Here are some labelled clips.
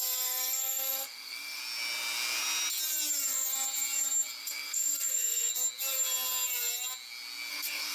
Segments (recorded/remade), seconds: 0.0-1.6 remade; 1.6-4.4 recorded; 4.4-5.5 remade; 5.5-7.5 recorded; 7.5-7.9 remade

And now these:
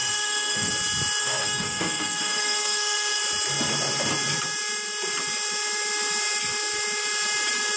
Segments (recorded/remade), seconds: 0.0-0.7 remade; 0.7-1.2 recorded; 1.2-3.2 remade; 3.2-7.8 recorded